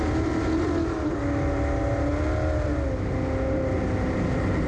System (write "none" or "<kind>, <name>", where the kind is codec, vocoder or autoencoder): none